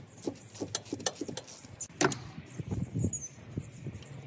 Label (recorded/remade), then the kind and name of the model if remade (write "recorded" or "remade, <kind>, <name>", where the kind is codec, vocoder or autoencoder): recorded